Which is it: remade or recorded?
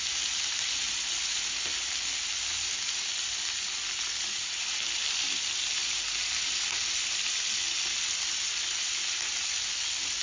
recorded